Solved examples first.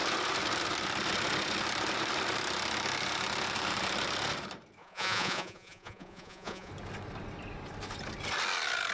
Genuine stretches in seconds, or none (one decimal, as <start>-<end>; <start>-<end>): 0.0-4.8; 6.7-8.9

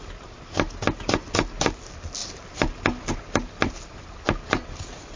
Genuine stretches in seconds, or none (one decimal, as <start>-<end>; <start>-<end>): 0.0-5.2

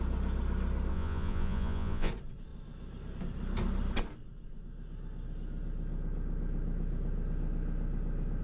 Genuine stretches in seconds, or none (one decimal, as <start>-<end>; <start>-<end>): 0.0-0.9; 2.1-8.4

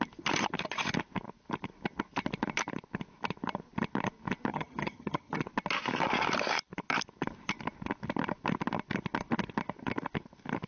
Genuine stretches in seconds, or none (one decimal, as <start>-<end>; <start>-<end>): 0.0-4.5; 5.4-10.7

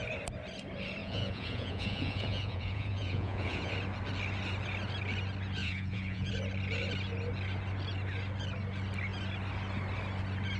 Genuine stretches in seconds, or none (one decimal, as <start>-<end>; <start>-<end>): 0.0-1.0; 3.7-5.6; 6.3-10.6